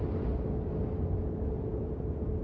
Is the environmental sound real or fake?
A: real